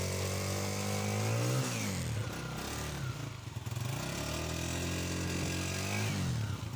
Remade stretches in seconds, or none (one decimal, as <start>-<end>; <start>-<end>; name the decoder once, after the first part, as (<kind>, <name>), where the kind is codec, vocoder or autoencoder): none